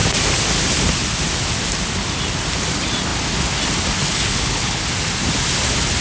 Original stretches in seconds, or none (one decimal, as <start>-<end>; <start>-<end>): 0.0-4.0; 4.8-6.0